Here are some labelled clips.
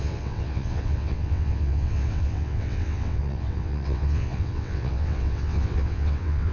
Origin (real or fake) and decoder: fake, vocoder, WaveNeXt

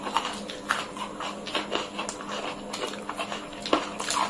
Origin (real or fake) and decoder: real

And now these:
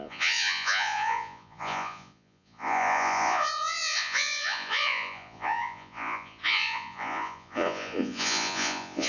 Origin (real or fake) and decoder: fake, vocoder, Vocos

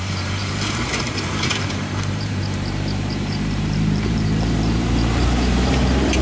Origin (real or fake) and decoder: fake, vocoder, BigVGAN v2